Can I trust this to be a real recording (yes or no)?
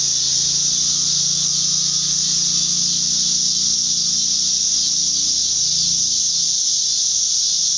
yes